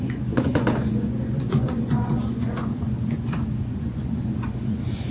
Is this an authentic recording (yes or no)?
no